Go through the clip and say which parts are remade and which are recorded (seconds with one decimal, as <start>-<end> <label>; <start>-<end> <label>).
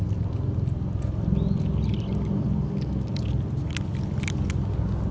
0.0-1.9 recorded; 1.9-3.7 remade; 3.7-5.1 recorded